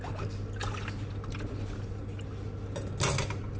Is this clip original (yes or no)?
yes